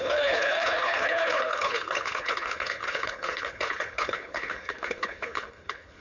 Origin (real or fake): fake